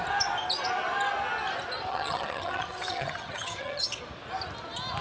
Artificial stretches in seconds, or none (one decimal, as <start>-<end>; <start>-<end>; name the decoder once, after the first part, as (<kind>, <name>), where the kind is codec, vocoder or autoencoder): 1.9-3.9 (vocoder, HiFi-GAN)

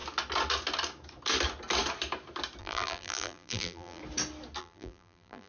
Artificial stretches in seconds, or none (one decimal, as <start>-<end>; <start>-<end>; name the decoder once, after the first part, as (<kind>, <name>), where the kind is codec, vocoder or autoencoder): 2.6-4.0 (vocoder, BigVGAN v2); 4.6-5.5

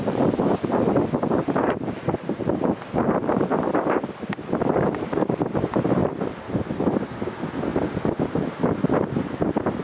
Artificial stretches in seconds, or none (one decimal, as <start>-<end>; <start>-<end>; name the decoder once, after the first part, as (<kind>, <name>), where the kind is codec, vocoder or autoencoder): 6.0-7.2 (vocoder, BigVGAN v2)